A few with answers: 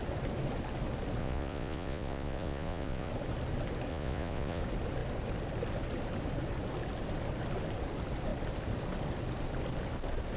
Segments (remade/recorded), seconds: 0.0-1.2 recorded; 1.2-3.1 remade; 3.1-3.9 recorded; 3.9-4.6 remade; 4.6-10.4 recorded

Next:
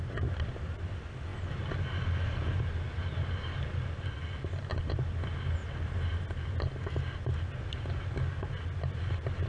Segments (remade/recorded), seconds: 0.0-1.3 remade; 1.3-4.9 recorded; 4.9-5.6 remade; 5.6-8.9 recorded; 8.9-9.5 remade

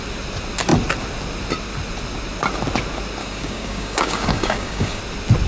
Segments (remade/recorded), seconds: 0.0-3.2 recorded; 3.2-5.0 remade; 5.0-5.5 recorded

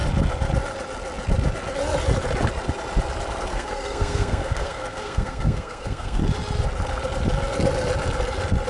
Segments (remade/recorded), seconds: 0.0-3.5 recorded; 3.5-6.2 remade; 6.2-8.7 recorded

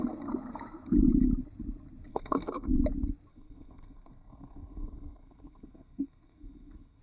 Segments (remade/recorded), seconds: 0.0-2.1 recorded; 2.1-2.7 remade; 2.7-3.3 recorded; 3.3-7.0 remade

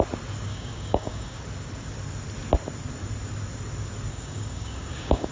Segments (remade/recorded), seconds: 0.0-0.5 recorded; 0.5-1.4 remade; 1.4-4.1 recorded; 4.1-5.3 remade

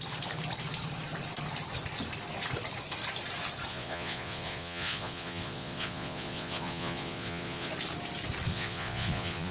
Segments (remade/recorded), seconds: 0.0-3.7 recorded; 3.7-7.7 remade; 7.7-8.5 recorded; 8.5-9.5 remade

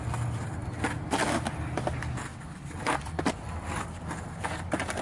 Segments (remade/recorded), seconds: 0.0-2.3 recorded; 2.3-3.2 remade; 3.2-5.0 recorded